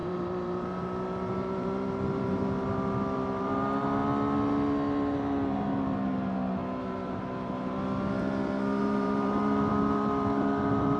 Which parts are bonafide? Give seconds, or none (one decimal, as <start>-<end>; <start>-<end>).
4.0-8.8